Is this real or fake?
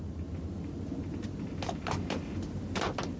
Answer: real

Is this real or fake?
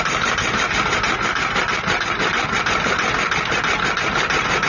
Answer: real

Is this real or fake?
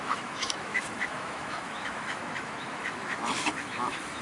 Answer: fake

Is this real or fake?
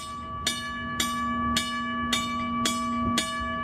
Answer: real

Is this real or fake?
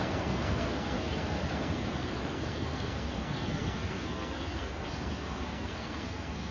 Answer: fake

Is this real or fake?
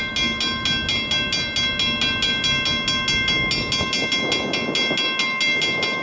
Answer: real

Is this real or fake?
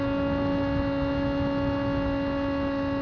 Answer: real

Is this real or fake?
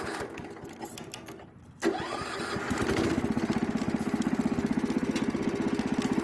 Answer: real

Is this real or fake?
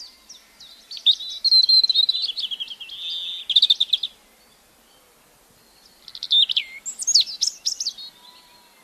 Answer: real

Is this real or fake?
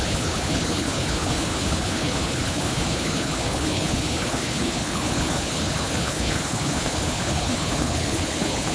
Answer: fake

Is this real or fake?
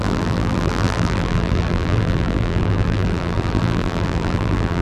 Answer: fake